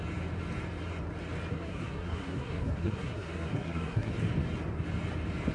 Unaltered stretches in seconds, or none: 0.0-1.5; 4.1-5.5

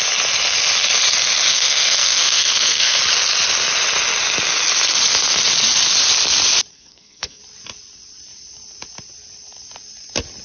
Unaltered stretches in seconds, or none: 0.0-1.5; 3.0-6.7; 7.4-10.4

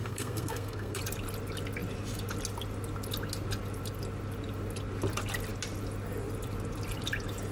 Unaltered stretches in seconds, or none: 1.0-7.5

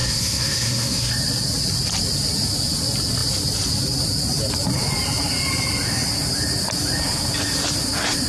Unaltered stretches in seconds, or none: 1.1-8.3

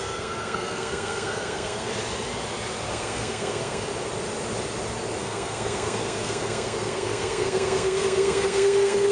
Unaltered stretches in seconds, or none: 1.9-2.9; 3.9-5.2